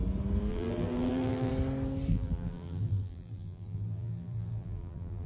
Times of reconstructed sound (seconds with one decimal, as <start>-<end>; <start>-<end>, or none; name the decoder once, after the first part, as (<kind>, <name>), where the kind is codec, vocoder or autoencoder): 0.5-1.5 (vocoder, BigVGAN v2); 2.1-5.3